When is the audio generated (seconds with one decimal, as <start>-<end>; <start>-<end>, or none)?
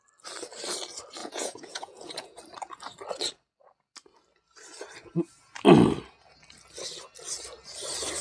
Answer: 1.2-2.4